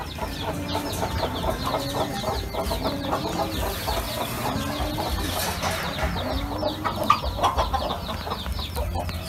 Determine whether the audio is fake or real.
real